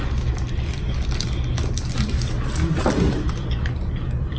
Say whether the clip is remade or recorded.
recorded